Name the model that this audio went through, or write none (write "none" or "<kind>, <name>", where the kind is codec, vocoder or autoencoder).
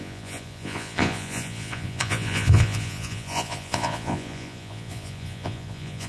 vocoder, Vocos